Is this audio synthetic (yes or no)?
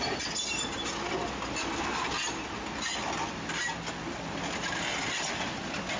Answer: no